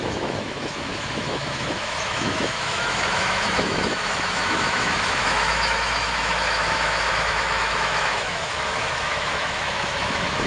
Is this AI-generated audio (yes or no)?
yes